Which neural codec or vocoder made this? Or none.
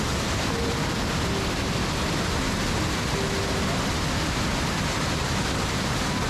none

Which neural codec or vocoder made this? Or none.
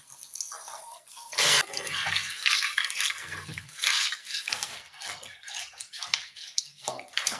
codec, SNAC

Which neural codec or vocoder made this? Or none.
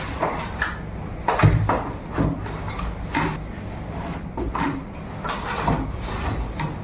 none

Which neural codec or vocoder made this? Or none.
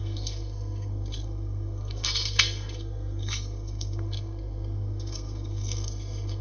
codec, SNAC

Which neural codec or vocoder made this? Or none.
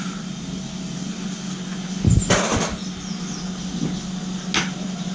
none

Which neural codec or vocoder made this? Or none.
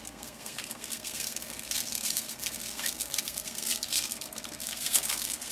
codec, SNAC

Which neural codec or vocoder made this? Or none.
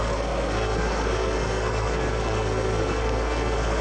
codec, SNAC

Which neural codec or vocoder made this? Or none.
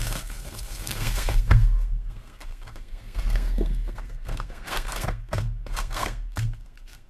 codec, SNAC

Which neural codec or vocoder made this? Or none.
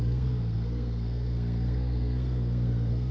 codec, SNAC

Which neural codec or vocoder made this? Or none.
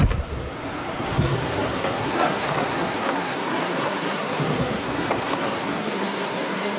codec, SNAC